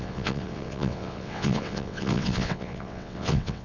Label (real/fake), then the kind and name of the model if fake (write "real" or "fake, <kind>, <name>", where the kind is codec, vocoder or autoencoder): fake, vocoder, WaveNeXt